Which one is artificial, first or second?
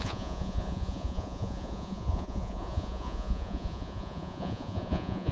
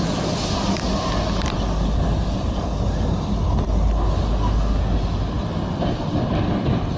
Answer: first